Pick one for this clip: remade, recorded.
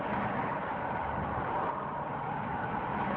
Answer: recorded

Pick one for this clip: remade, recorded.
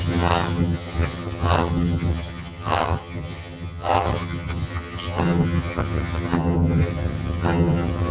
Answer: remade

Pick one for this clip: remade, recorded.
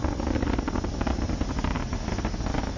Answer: recorded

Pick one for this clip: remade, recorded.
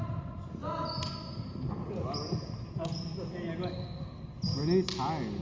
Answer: recorded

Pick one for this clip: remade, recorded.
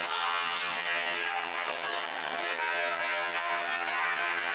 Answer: remade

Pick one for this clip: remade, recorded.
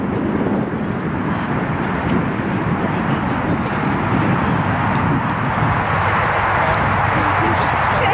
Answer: recorded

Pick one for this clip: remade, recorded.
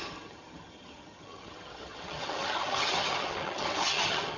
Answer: remade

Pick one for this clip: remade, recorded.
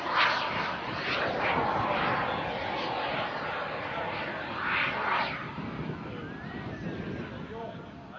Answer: recorded